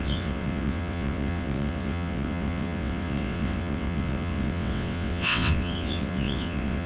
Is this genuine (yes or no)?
no